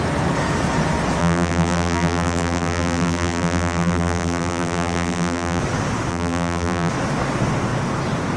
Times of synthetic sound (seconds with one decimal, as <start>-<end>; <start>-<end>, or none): 1.2-5.6; 6.1-6.9